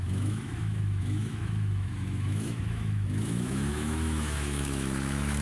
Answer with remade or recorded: remade